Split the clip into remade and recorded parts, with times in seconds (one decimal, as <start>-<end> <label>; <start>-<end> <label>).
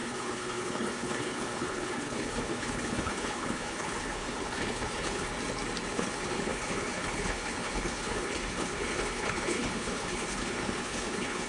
0.0-5.3 remade; 5.3-5.9 recorded; 5.9-11.5 remade